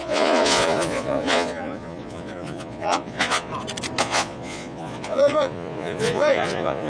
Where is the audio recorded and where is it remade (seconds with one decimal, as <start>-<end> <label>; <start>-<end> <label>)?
0.0-3.5 remade; 3.5-4.0 recorded; 4.0-6.9 remade